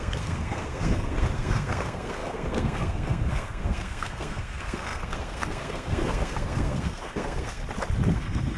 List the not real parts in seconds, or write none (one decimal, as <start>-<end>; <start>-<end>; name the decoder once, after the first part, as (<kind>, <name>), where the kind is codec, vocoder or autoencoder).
0.0-7.6 (codec, SNAC); 8.1-8.6